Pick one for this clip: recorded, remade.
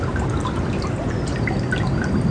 recorded